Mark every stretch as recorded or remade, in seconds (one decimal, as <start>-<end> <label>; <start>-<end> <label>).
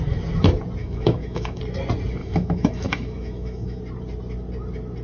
0.0-0.8 recorded; 0.8-1.6 remade; 1.6-2.2 recorded; 2.2-3.8 remade; 3.8-5.0 recorded